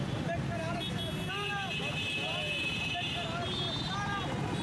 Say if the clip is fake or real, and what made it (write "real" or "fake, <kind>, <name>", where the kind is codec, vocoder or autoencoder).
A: real